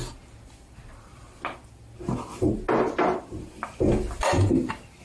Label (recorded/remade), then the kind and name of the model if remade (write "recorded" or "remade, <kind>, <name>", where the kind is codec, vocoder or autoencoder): recorded